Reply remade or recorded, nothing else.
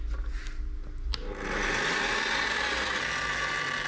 recorded